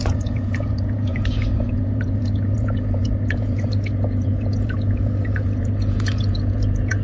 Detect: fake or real fake